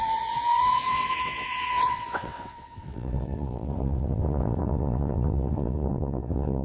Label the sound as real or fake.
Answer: fake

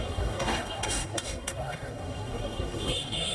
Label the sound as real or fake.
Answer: fake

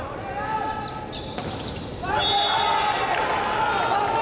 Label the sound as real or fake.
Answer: real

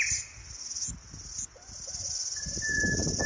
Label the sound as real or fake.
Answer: real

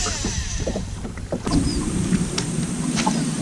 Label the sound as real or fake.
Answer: fake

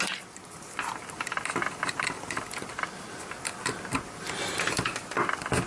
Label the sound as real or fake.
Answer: real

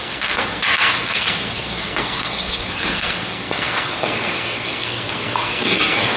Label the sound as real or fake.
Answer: fake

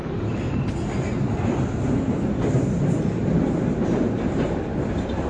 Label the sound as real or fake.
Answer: real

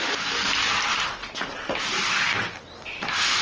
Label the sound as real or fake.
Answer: real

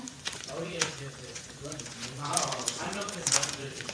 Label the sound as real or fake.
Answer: fake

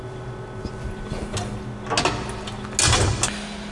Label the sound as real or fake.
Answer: real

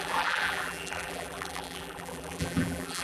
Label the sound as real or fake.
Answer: fake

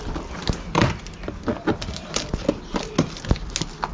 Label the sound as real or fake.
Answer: real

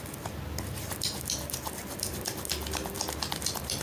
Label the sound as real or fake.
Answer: real